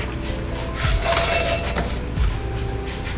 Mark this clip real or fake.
real